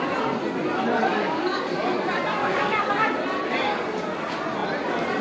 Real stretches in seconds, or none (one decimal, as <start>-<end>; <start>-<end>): 0.0-1.0; 2.0-2.4; 2.9-5.2